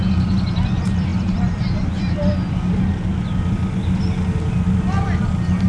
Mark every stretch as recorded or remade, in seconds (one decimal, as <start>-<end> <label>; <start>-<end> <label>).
0.0-5.7 recorded